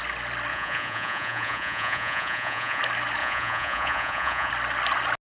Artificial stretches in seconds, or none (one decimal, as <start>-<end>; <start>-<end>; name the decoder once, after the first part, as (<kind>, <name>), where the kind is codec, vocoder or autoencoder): 0.5-2.8 (vocoder, Vocos); 3.2-4.5